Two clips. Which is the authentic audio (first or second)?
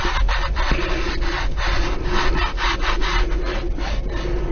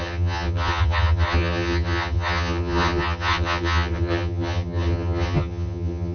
first